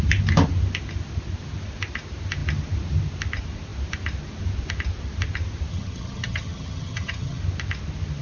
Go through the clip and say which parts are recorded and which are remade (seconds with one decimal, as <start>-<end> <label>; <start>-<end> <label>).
0.0-5.7 recorded; 5.7-7.4 remade; 7.4-8.2 recorded

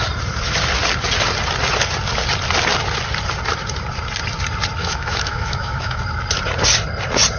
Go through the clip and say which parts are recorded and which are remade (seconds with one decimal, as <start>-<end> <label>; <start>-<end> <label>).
0.0-4.8 recorded; 4.8-6.0 remade; 6.0-7.4 recorded

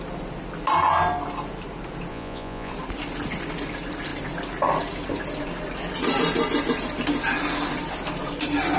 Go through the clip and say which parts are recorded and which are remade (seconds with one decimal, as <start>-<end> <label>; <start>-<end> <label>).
0.0-2.1 recorded; 2.1-2.7 remade; 2.7-8.8 recorded

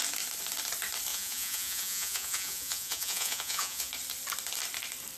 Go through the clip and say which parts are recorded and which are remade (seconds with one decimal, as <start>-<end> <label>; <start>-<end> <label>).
0.0-1.1 recorded; 1.1-3.9 remade; 3.9-5.2 recorded

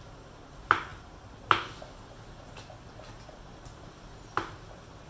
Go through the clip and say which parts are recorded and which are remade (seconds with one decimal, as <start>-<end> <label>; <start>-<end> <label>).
0.0-5.1 recorded